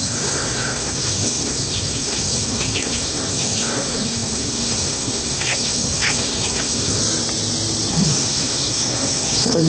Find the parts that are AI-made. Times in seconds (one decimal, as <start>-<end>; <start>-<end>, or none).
0.0-7.0; 7.9-9.7